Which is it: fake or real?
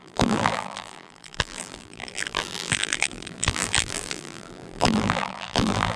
fake